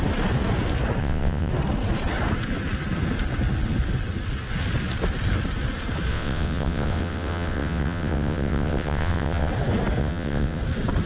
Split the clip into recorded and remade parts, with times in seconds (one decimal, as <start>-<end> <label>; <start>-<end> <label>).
0.0-1.0 recorded; 1.0-1.5 remade; 1.5-6.1 recorded; 6.1-9.5 remade; 9.5-10.0 recorded; 10.0-10.6 remade; 10.6-11.1 recorded